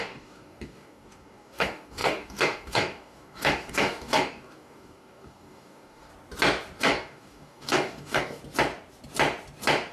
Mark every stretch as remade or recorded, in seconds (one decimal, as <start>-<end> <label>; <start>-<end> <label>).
0.0-6.1 remade; 6.1-6.8 recorded; 6.8-8.4 remade; 8.4-9.9 recorded